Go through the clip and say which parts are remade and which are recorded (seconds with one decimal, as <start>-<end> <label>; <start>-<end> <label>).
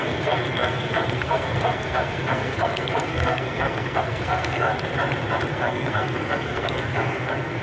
0.0-4.7 remade; 4.7-5.5 recorded; 5.5-7.6 remade